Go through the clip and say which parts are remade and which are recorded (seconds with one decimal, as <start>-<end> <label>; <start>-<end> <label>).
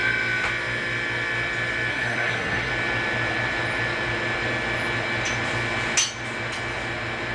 0.0-1.9 recorded; 1.9-2.7 remade; 2.7-7.3 recorded